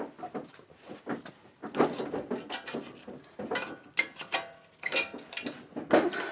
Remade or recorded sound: recorded